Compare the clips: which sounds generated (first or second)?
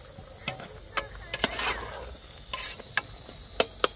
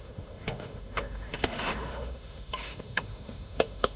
second